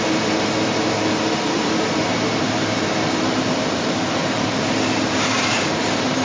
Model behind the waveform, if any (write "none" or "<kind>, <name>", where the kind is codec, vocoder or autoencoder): vocoder, BigVGAN v2